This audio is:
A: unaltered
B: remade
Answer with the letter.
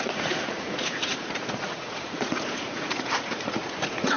B